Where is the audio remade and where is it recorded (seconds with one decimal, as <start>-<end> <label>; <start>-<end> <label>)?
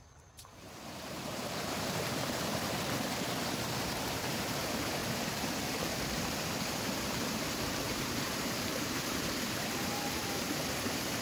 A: 0.0-2.5 remade; 2.5-3.8 recorded; 3.8-5.0 remade; 5.0-7.1 recorded; 7.1-11.2 remade